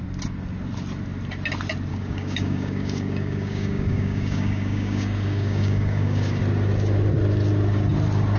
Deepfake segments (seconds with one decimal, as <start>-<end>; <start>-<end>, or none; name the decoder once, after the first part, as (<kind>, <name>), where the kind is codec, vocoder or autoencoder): 1.9-6.4 (codec, DAC)